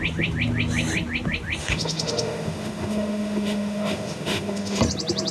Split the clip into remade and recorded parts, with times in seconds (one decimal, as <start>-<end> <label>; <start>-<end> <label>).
0.0-1.6 recorded; 1.6-4.8 remade; 4.8-5.3 recorded